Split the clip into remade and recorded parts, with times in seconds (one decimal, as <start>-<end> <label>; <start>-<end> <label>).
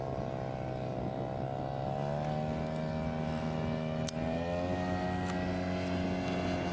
0.0-6.7 recorded